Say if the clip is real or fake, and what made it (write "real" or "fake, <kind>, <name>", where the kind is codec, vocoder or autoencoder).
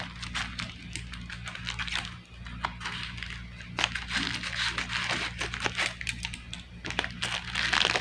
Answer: real